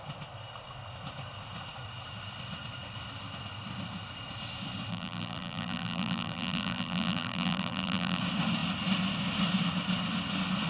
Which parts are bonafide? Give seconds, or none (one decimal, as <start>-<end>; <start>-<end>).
0.0-4.9; 8.2-10.7